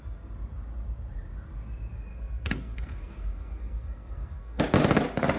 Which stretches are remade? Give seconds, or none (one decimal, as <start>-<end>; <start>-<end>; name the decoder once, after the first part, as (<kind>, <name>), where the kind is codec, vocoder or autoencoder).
2.1-4.6 (codec, SNAC)